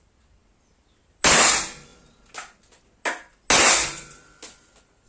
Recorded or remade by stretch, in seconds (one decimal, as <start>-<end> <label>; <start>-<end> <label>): 0.0-5.1 recorded